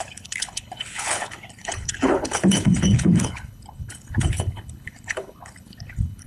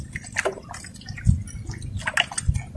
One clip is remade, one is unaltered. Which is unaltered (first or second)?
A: second